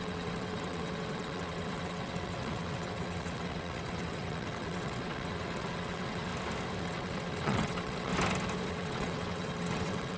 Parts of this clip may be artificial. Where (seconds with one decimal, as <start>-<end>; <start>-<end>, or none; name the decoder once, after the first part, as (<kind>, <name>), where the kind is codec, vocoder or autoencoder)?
0.0-6.3 (vocoder, WaveNeXt); 6.8-8.1; 8.7-10.2